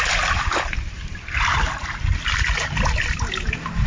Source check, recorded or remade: recorded